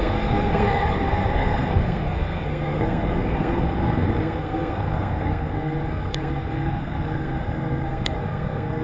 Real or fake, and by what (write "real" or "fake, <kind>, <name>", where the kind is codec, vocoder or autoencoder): fake, codec, SNAC